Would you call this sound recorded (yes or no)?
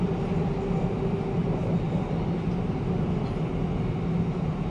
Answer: yes